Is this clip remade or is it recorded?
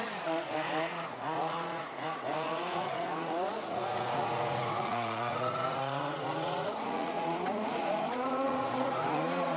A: remade